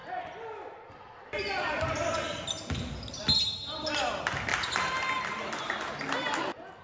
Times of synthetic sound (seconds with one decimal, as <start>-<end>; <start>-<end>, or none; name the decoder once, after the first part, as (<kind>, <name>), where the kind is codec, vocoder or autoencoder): none